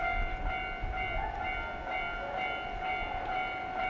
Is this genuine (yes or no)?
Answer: yes